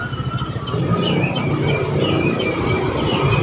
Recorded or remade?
recorded